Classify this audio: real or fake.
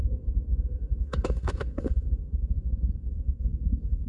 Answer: fake